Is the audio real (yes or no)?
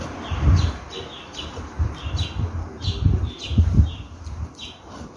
yes